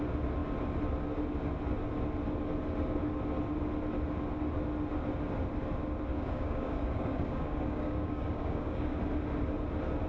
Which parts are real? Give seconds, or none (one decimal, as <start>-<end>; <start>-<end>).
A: 0.0-6.1; 9.0-10.1